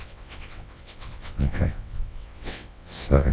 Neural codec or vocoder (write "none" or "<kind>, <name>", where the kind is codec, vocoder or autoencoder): vocoder, WaveNeXt